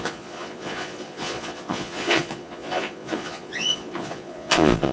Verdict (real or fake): fake